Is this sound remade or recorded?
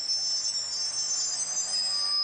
recorded